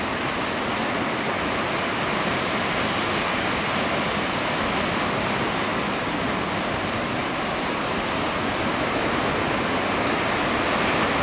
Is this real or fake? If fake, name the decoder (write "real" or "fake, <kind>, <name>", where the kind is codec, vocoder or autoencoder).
real